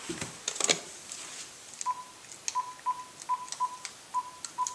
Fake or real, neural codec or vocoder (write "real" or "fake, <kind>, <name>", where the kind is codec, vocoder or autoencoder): real